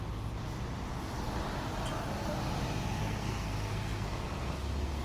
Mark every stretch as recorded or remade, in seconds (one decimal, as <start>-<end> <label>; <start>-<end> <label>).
0.0-3.0 recorded; 3.0-5.0 remade